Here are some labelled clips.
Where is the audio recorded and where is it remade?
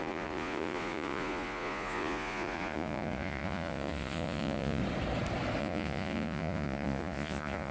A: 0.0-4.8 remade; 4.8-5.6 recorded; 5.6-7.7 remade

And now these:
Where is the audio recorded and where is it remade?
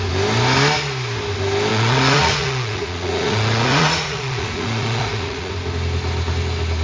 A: 0.0-1.7 recorded; 1.7-5.5 remade; 5.5-6.8 recorded